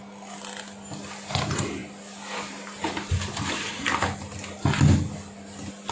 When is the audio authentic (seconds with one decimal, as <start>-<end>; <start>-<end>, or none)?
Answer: 0.0-5.9

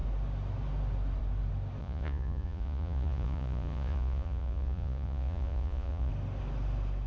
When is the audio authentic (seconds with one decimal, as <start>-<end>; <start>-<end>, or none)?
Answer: 0.0-1.8; 6.1-7.1

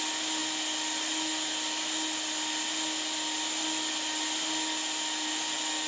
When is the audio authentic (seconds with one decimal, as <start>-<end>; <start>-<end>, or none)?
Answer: 0.0-5.9

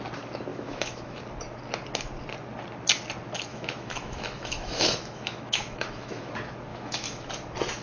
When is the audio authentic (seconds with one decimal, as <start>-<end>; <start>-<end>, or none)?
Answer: 0.0-0.5; 1.2-3.5; 6.3-6.7; 7.3-7.8

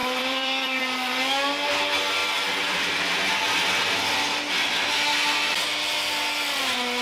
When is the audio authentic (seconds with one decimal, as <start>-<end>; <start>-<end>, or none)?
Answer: 0.8-2.2; 3.1-7.0